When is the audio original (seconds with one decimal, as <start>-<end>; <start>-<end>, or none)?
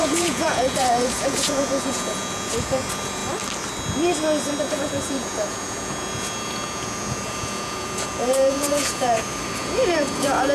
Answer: 3.2-4.6